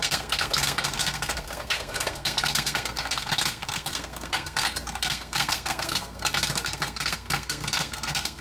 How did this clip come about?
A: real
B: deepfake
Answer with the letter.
B